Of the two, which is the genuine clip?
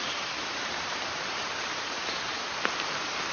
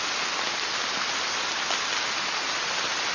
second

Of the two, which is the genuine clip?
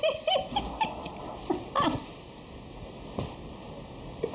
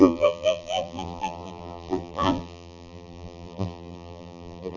first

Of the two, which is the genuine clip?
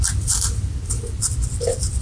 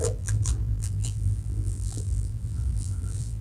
first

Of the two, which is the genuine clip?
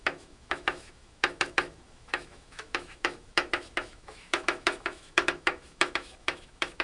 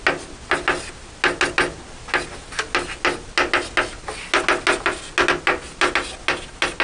second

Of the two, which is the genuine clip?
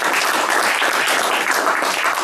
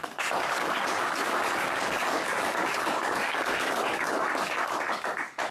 first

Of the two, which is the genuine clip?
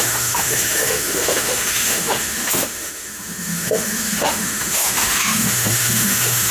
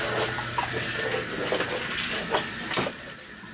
second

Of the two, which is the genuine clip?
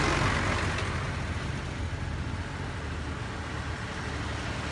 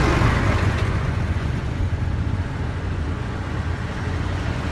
first